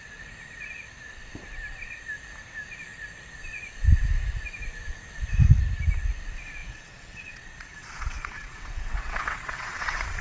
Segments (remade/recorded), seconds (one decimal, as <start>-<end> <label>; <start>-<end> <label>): 0.0-6.6 recorded; 6.6-10.2 remade